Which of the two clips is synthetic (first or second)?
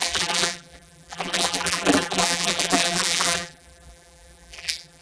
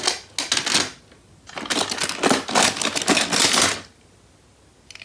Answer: first